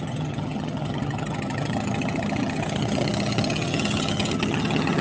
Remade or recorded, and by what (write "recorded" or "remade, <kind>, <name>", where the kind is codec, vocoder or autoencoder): remade, vocoder, HiFi-GAN